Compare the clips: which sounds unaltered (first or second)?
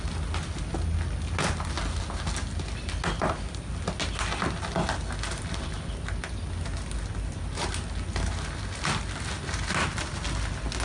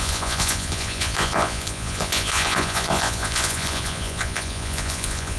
first